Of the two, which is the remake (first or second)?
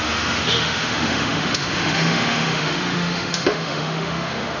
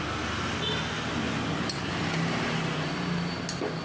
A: first